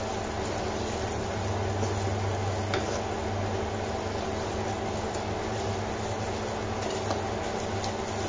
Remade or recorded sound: recorded